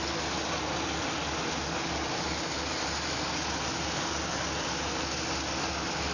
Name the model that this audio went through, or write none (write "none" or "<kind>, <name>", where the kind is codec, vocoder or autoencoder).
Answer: none